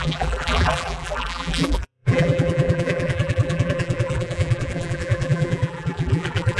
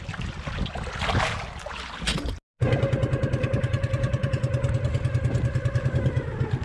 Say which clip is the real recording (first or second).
second